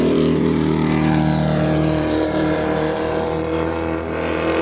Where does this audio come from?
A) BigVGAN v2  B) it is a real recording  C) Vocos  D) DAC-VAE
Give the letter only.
A